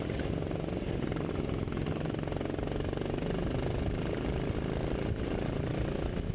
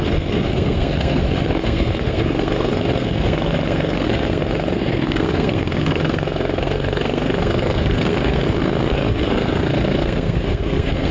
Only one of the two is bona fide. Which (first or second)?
first